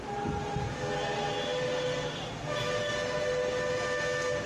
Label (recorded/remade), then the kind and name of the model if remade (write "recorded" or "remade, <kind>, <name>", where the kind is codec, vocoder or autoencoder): recorded